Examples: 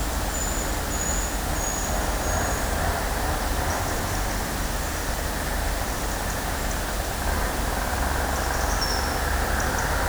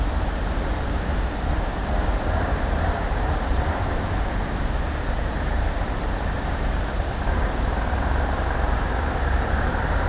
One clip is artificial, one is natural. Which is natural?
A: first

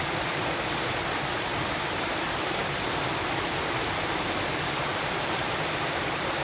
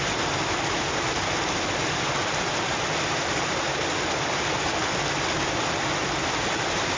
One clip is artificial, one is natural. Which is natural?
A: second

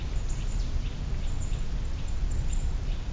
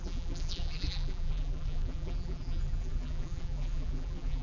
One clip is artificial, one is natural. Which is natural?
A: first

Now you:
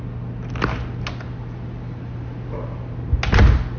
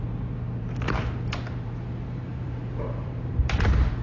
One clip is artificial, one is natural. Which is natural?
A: first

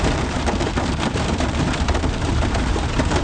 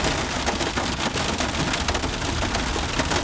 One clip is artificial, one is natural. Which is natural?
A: second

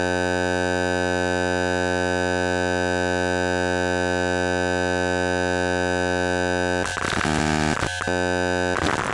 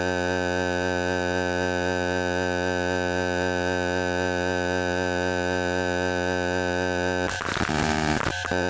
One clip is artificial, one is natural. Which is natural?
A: first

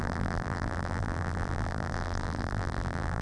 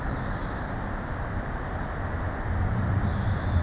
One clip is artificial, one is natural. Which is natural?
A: second